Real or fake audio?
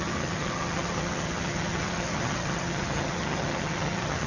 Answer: fake